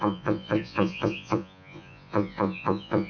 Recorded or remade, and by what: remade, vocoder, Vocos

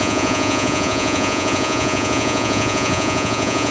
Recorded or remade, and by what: remade, vocoder, Vocos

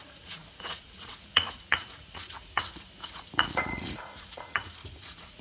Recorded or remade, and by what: remade, vocoder, Vocos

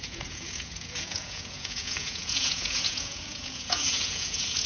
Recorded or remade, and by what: remade, vocoder, Vocos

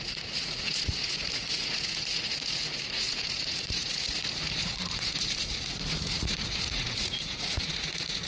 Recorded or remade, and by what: remade, vocoder, Vocos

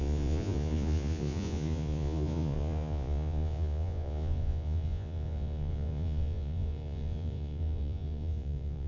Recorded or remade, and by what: remade, vocoder, Vocos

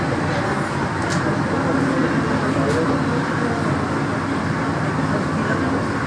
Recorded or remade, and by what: recorded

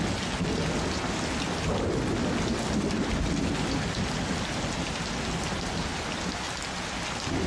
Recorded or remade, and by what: recorded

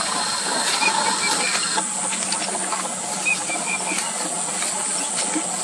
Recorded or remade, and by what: recorded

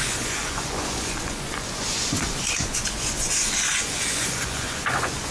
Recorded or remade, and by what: remade, vocoder, Vocos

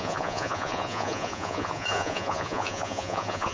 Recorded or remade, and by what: remade, vocoder, Vocos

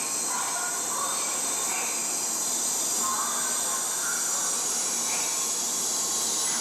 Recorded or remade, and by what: recorded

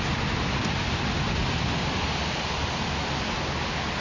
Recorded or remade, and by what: recorded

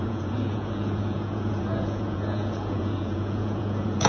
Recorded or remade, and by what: remade, vocoder, Vocos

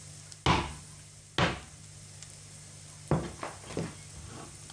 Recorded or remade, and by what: recorded